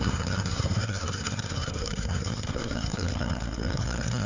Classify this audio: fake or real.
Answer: fake